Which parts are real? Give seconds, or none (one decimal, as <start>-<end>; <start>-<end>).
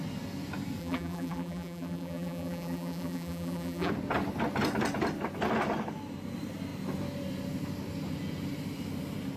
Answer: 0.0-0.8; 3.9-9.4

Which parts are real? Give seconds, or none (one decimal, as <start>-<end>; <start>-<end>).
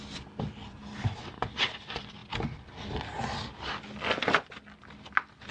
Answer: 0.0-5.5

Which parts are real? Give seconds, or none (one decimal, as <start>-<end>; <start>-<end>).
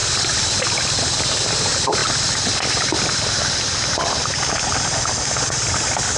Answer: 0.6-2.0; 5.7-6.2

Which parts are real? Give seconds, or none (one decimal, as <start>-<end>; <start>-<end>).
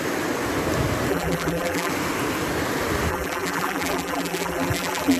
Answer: 0.0-1.1; 1.9-3.1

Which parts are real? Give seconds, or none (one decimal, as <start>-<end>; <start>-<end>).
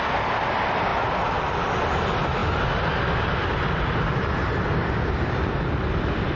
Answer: 0.0-6.4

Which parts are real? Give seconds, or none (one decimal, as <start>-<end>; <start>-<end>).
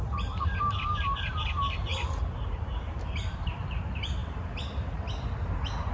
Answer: none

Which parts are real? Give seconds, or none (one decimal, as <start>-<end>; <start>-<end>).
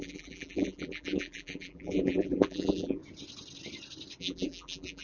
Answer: 3.0-4.2